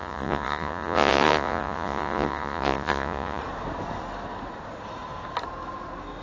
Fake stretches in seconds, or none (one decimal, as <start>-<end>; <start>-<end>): 0.0-3.4